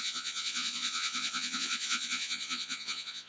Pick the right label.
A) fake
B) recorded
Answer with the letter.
A